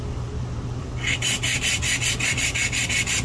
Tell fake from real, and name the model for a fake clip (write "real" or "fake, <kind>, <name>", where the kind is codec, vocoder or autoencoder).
fake, vocoder, BigVGAN v2